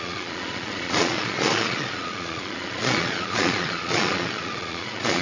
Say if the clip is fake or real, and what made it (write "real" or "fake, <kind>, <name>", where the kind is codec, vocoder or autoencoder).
fake, vocoder, Vocos